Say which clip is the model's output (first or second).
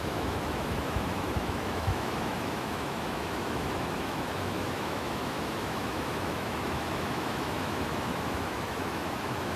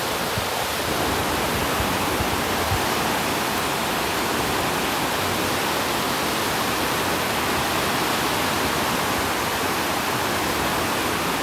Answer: first